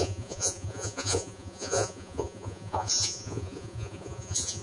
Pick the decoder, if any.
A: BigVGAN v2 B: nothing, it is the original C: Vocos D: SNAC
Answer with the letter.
C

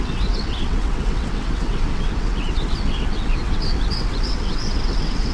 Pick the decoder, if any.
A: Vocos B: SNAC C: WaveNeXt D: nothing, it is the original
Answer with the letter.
C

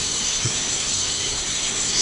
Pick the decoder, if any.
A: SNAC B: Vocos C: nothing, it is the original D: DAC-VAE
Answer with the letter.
A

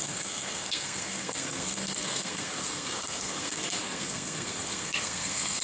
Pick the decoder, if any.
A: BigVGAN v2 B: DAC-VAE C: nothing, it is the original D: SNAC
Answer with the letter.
D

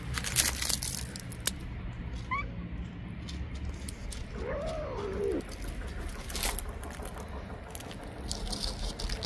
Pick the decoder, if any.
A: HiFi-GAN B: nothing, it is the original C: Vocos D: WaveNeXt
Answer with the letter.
B